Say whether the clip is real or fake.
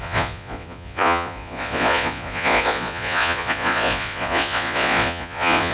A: fake